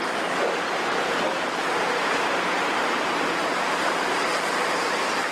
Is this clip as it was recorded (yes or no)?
no